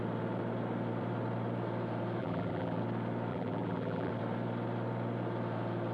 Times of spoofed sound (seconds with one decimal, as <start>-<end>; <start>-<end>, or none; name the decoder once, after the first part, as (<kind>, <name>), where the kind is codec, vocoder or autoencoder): 2.2-2.8 (vocoder, BigVGAN v2); 3.3-4.1